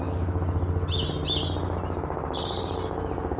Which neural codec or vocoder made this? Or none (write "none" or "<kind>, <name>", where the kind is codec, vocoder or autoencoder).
none